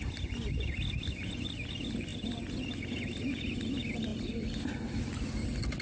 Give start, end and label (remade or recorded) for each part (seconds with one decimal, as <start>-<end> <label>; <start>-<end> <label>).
0.0-5.8 recorded